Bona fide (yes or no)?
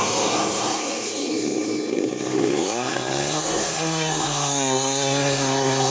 no